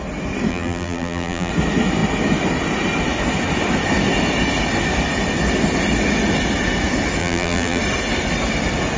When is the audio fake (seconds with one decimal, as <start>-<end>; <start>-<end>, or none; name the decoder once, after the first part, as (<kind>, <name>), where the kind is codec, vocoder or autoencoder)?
0.5-1.5 (vocoder, BigVGAN v2); 7.2-7.8